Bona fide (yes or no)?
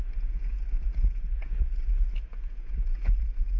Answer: no